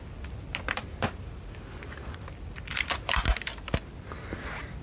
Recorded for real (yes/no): yes